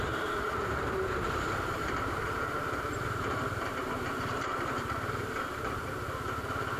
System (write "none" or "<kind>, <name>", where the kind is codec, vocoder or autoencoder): vocoder, BigVGAN v2